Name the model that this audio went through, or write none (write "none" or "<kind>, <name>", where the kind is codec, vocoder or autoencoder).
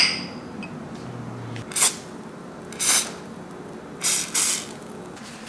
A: none